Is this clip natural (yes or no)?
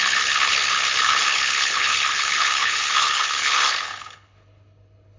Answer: no